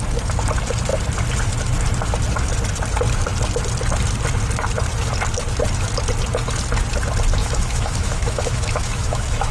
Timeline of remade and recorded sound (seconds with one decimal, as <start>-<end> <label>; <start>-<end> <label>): 0.0-7.4 recorded; 7.4-9.5 remade